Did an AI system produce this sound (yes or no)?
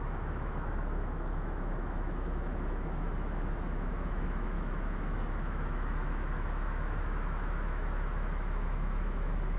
yes